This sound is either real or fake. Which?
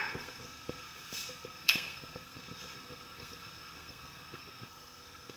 fake